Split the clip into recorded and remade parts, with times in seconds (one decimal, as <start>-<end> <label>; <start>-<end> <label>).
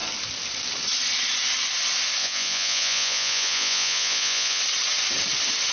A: 0.0-2.2 recorded; 2.2-4.6 remade; 4.6-5.7 recorded